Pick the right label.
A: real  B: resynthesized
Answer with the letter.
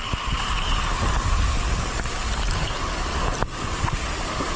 A